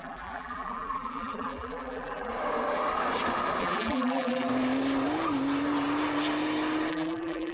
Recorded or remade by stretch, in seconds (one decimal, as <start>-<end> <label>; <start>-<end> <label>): 0.0-2.3 remade; 2.3-3.6 recorded; 3.6-4.5 remade; 4.5-6.9 recorded; 6.9-7.5 remade